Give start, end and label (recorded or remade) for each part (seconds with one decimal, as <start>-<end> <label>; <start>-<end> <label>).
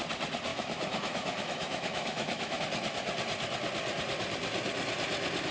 0.0-0.5 recorded; 0.5-2.6 remade; 2.6-5.5 recorded